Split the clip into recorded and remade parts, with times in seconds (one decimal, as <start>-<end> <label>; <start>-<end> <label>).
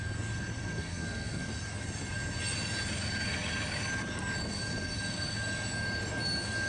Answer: 0.0-0.6 recorded; 0.6-1.5 remade; 1.5-6.7 recorded